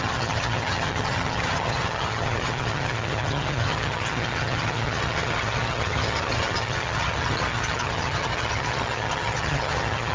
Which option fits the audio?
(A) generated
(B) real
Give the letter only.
A